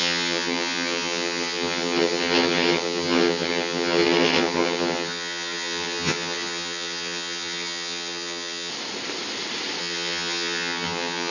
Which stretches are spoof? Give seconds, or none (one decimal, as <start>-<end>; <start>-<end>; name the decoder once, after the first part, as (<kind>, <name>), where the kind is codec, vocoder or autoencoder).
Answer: 0.0-8.7 (vocoder, HiFi-GAN); 9.8-11.3